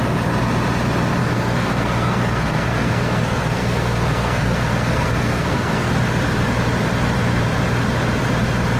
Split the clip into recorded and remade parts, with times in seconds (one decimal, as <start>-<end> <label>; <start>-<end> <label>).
0.0-1.2 recorded; 1.2-5.9 remade; 5.9-8.8 recorded

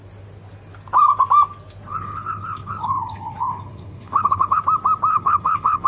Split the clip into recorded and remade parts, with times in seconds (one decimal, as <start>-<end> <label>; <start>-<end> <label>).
0.0-1.9 recorded; 1.9-4.6 remade; 4.6-5.1 recorded; 5.1-5.9 remade

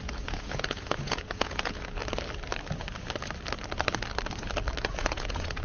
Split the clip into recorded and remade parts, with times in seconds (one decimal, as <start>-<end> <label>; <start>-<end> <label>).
0.0-2.0 remade; 2.0-4.8 recorded; 4.8-5.6 remade

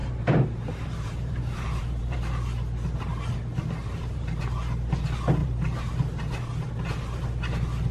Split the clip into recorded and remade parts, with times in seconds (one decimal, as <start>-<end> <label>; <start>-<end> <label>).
0.0-2.3 remade; 2.3-3.8 recorded; 3.8-4.4 remade; 4.4-5.4 recorded; 5.4-5.9 remade; 5.9-7.9 recorded

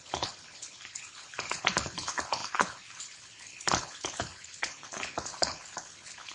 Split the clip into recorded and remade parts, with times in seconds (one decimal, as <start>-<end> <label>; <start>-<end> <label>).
0.0-6.3 remade